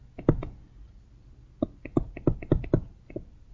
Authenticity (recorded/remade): recorded